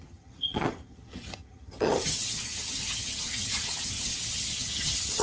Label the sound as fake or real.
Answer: fake